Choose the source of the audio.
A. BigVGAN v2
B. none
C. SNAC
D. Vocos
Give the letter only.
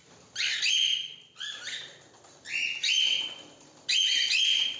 B